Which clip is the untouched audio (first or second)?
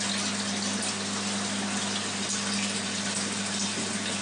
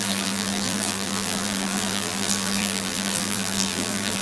first